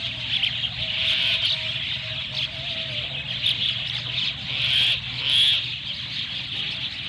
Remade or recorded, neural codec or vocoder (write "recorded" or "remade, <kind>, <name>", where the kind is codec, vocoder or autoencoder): recorded